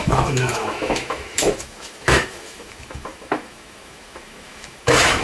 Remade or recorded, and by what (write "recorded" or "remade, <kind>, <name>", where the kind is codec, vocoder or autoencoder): remade, autoencoder, DAC-VAE